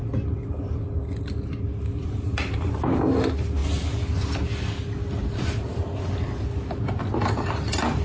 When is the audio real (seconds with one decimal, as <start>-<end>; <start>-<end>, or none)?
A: 0.0-1.9; 2.7-8.0